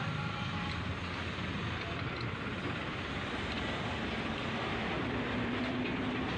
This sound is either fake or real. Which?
fake